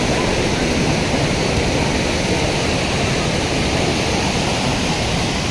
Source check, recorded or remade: remade